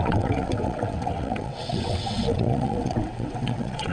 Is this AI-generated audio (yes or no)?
yes